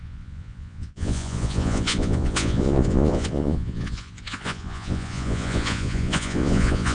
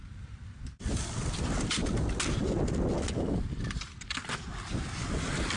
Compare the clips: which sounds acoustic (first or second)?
second